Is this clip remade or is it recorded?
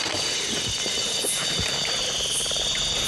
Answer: recorded